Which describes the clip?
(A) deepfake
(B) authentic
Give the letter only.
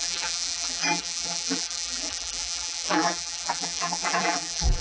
A